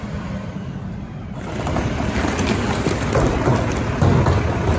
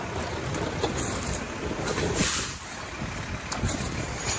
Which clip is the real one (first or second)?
first